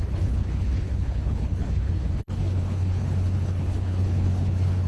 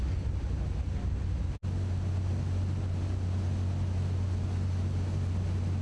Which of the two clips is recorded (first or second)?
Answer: second